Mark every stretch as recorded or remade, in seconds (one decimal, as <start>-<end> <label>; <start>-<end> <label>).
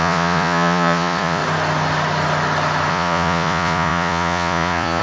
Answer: 0.0-1.4 remade; 1.4-2.9 recorded; 2.9-5.0 remade